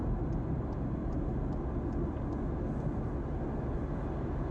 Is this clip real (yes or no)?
yes